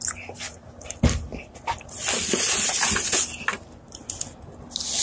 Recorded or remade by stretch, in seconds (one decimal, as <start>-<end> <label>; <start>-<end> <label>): 0.0-5.0 recorded